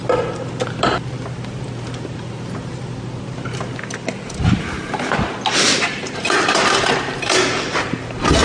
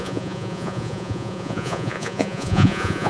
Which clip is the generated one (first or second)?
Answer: second